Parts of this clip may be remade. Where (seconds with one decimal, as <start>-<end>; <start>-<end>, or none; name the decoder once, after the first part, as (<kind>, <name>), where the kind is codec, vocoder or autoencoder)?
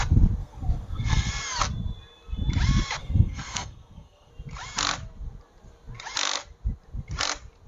0.4-1.3 (codec, SNAC); 3.0-4.3